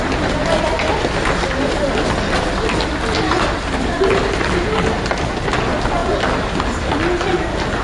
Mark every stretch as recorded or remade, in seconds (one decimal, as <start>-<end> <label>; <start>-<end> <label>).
0.0-7.8 recorded